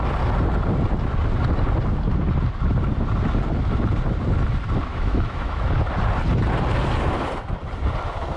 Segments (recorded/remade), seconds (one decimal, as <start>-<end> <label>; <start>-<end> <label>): 0.0-4.9 recorded; 4.9-5.7 remade; 5.7-8.4 recorded